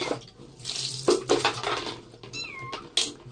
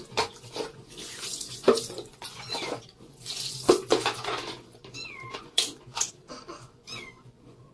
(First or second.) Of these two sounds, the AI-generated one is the second